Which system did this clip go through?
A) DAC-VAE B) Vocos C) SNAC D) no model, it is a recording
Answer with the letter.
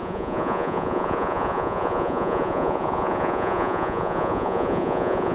B